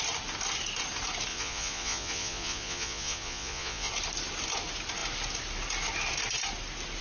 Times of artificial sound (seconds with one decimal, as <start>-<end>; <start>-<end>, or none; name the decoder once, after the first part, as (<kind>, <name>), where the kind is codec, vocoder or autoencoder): 1.3-3.9 (vocoder, Vocos)